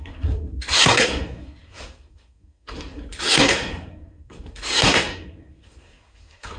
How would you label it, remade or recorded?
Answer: remade